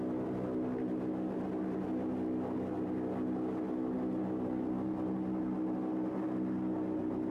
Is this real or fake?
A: real